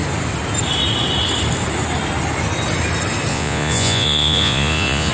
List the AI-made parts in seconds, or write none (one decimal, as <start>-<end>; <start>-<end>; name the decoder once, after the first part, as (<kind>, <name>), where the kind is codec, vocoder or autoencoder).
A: 3.3-5.1 (vocoder, Vocos)